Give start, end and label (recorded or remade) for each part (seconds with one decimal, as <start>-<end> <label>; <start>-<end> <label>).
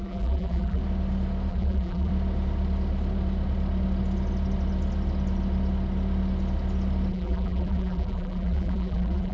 0.0-0.8 remade; 0.8-1.5 recorded; 1.5-2.1 remade; 2.1-7.1 recorded; 7.1-9.3 remade